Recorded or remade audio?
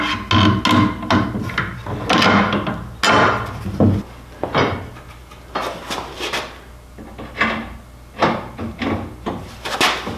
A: recorded